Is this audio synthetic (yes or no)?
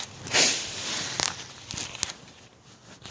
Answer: no